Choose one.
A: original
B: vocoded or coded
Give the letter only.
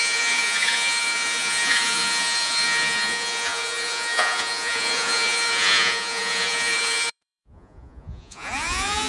B